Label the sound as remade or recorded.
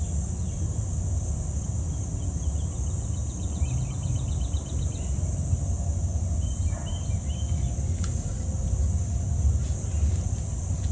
recorded